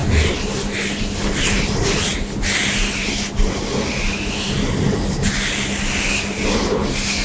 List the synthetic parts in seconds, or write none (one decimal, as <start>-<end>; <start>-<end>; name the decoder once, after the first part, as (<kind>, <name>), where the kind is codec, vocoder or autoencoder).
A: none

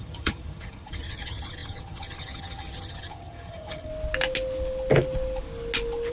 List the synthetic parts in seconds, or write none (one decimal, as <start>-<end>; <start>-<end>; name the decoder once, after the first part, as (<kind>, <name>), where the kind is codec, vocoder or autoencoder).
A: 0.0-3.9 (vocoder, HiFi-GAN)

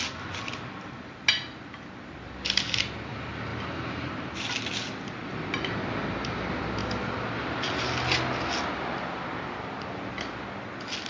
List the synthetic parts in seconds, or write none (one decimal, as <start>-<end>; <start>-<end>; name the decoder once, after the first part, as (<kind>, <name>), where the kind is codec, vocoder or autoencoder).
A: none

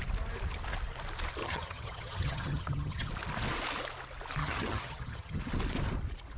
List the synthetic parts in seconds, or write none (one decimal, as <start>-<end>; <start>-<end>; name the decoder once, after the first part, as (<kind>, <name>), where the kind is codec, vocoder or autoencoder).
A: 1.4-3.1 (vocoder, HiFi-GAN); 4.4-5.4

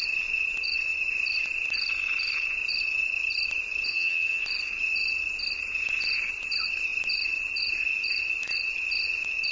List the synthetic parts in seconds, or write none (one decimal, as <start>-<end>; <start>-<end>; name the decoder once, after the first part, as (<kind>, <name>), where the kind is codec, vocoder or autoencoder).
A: 3.9-4.4 (vocoder, HiFi-GAN)